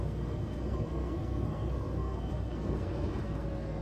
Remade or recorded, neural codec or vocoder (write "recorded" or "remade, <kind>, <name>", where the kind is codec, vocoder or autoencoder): remade, codec, SNAC